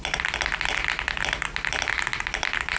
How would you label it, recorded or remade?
recorded